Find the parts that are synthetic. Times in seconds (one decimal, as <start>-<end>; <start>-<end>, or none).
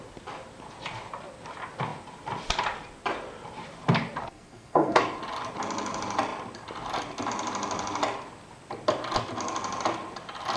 4.2-5.0